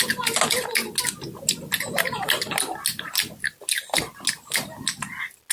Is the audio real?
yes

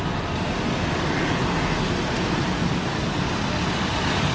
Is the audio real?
yes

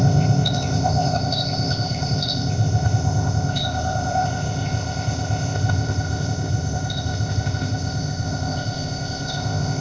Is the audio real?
no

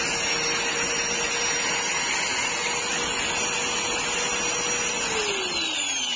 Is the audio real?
yes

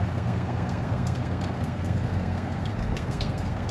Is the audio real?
no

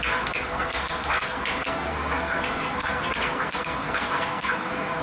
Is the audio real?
no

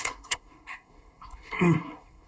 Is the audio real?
no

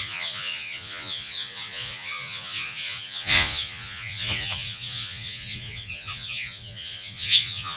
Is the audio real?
no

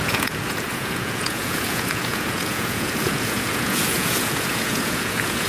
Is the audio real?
no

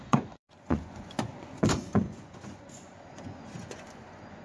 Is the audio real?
no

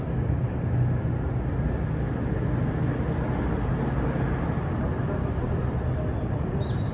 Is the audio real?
yes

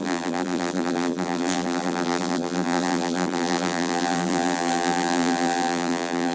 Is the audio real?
no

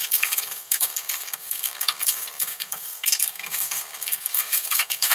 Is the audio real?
no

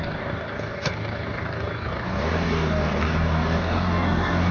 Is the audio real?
no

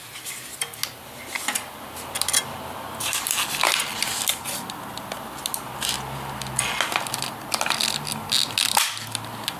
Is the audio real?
yes